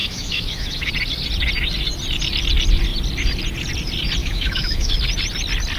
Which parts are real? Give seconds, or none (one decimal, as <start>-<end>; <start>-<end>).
0.9-4.2; 4.9-5.8